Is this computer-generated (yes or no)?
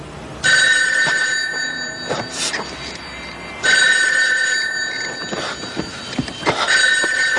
no